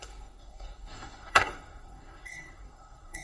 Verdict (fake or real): fake